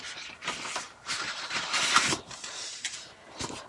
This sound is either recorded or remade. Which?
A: remade